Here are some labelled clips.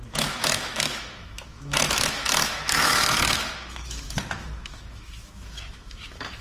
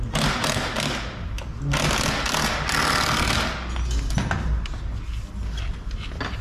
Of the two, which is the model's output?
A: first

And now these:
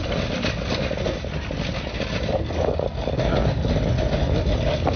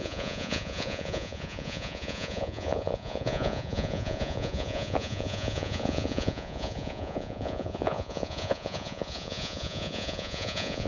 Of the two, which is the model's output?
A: second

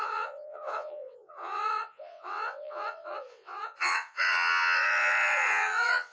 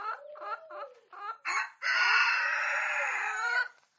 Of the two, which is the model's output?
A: first